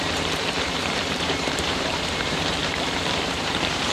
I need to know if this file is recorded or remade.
remade